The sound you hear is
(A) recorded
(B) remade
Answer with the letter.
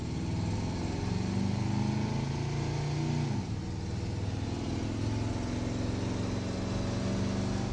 A